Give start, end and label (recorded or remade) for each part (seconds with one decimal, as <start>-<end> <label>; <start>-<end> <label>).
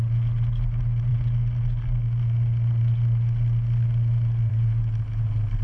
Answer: 0.0-5.6 recorded